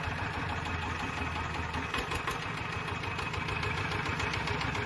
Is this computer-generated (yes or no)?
no